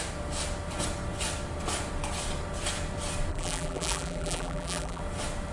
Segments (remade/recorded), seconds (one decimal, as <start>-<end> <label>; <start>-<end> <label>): 0.0-3.3 recorded; 3.3-5.0 remade; 5.0-5.5 recorded